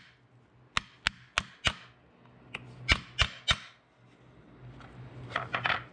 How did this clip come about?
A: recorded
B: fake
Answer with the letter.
A